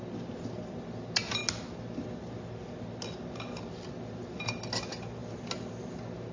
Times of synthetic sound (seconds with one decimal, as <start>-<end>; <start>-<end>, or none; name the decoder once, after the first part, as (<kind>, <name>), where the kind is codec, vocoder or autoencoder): none